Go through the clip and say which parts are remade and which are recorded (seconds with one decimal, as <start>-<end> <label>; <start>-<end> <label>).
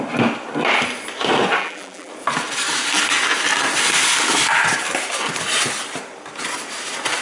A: 0.0-1.6 recorded; 1.6-2.1 remade; 2.1-7.2 recorded